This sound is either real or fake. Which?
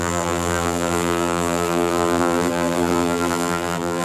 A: fake